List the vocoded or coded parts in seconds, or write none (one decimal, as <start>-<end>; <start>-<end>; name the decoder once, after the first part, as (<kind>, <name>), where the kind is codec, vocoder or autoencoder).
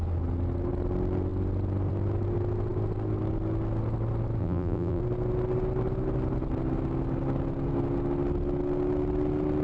4.4-5.0 (vocoder, BigVGAN v2)